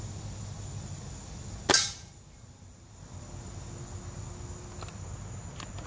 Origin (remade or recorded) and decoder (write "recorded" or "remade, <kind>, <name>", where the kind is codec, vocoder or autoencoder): recorded